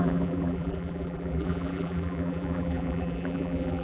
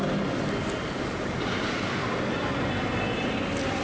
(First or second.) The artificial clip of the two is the first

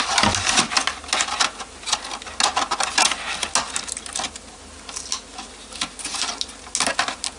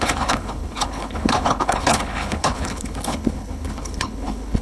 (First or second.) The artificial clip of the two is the second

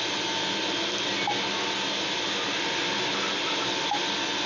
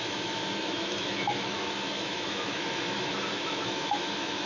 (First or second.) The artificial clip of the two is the second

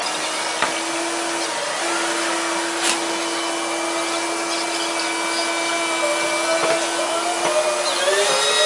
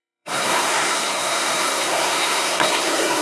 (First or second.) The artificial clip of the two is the second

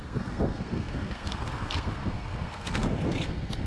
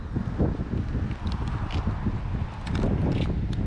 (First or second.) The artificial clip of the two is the first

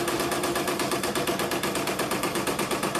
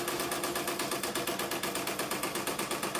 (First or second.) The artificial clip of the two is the first